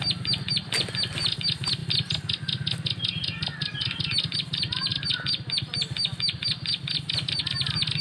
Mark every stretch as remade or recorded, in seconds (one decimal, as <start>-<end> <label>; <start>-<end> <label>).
0.0-8.0 recorded